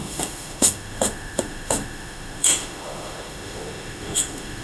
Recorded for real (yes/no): no